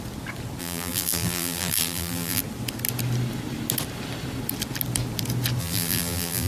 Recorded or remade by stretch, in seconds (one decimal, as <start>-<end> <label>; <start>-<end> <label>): 0.0-0.6 recorded; 0.6-2.4 remade; 2.4-5.6 recorded; 5.6-6.5 remade